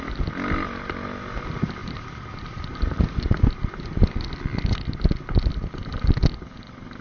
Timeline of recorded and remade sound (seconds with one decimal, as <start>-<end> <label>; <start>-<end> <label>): 0.0-1.8 recorded; 1.8-4.9 remade; 4.9-7.0 recorded